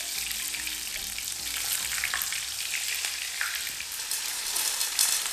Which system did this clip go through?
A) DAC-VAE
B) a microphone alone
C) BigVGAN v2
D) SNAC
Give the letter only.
B